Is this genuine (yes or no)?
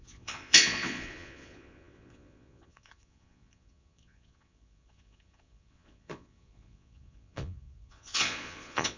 no